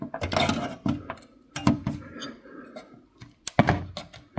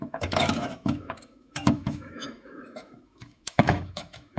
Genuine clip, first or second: first